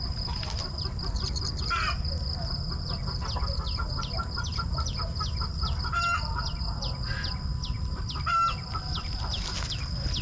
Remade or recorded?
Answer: recorded